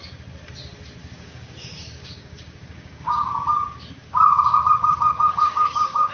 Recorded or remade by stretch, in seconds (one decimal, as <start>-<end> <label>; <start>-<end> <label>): 0.0-1.0 recorded; 1.0-3.5 remade; 3.5-4.0 recorded; 4.0-6.1 remade

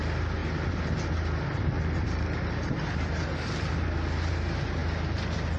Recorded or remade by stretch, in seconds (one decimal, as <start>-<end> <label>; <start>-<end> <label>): 0.0-5.6 recorded